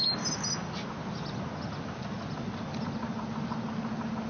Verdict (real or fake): real